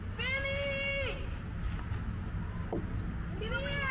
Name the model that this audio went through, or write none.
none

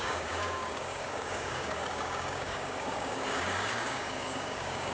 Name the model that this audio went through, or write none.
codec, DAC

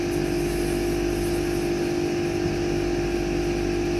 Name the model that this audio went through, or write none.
none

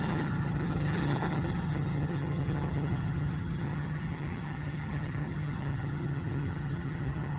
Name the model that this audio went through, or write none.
vocoder, HiFi-GAN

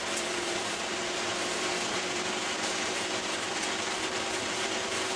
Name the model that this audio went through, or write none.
vocoder, BigVGAN v2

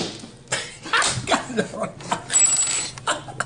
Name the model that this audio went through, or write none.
none